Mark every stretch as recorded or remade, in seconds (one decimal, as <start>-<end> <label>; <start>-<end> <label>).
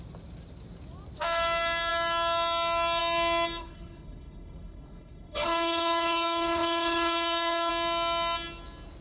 0.0-3.6 recorded; 3.6-7.7 remade; 7.7-9.0 recorded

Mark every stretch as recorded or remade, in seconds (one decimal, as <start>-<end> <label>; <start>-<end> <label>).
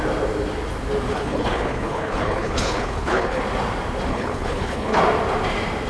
0.0-1.1 recorded; 1.1-3.4 remade; 3.4-4.1 recorded; 4.1-5.0 remade; 5.0-5.9 recorded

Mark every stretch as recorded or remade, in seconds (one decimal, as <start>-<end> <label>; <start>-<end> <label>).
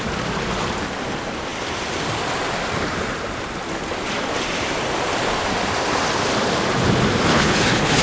0.0-7.3 recorded; 7.3-8.0 remade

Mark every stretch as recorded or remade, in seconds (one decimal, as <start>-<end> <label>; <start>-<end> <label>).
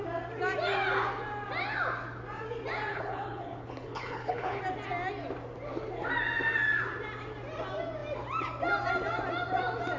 0.0-2.9 recorded; 2.9-4.6 remade; 4.6-10.0 recorded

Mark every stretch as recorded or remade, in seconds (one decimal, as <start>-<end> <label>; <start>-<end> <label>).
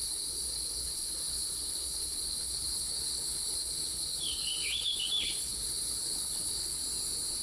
0.0-6.8 remade; 6.8-7.4 recorded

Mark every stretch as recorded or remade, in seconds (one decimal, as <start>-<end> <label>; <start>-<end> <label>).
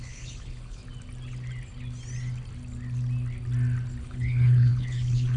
0.0-0.8 remade; 0.8-4.0 recorded; 4.0-5.4 remade